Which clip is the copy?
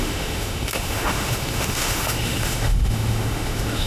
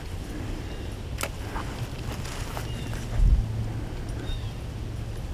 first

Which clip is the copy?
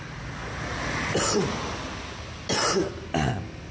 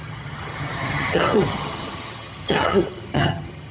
second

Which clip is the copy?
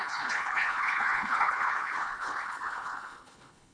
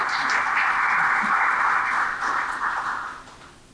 first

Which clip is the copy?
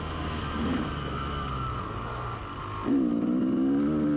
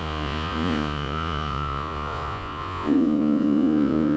second